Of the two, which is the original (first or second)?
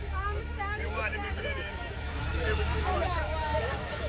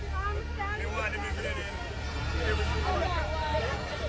second